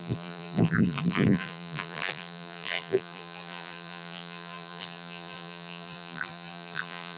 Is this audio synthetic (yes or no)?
yes